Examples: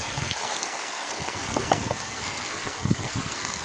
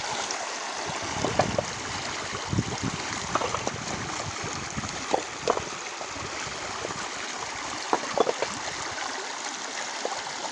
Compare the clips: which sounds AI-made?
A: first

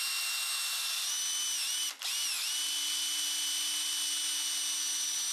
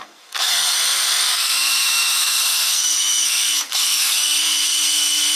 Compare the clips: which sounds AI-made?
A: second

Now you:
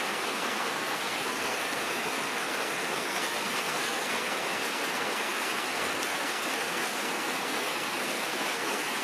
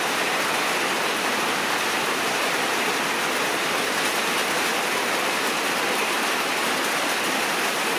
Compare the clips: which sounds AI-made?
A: first